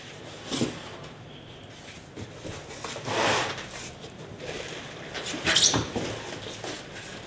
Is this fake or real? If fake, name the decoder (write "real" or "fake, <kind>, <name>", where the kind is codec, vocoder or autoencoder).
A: real